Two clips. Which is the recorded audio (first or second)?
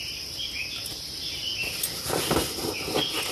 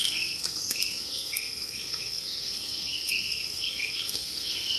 first